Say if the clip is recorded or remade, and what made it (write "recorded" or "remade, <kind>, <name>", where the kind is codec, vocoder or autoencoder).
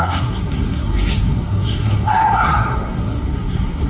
remade, codec, SNAC